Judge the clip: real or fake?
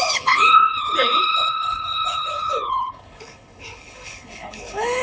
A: fake